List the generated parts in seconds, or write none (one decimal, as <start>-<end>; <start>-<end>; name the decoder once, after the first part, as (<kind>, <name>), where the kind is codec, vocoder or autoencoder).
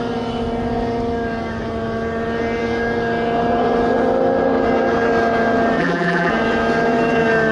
5.8-6.3 (vocoder, BigVGAN v2)